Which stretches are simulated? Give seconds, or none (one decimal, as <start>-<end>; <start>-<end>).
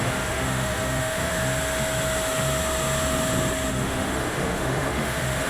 0.0-1.3; 3.7-5.5